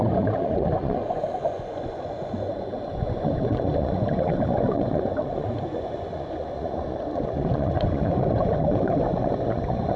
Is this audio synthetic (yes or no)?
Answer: yes